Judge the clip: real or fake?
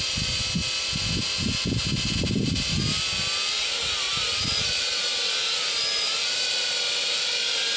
real